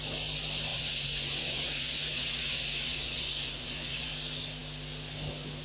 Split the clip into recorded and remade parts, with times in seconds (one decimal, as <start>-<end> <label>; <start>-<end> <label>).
0.0-0.7 recorded; 0.7-4.1 remade; 4.1-5.6 recorded